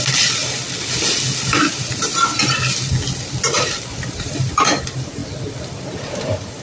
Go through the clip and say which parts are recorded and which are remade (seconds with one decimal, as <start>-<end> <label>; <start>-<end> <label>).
0.0-0.4 remade; 0.4-1.7 recorded; 1.7-2.1 remade; 2.1-3.4 recorded; 3.4-5.2 remade; 5.2-5.8 recorded; 5.8-6.6 remade